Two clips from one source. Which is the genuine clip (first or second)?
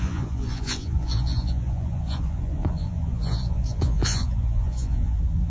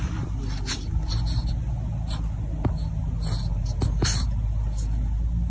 second